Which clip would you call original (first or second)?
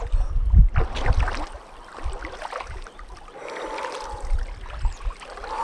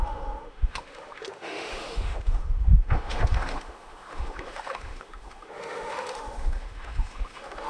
first